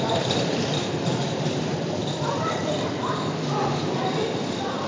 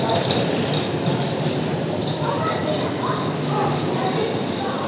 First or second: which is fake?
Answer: first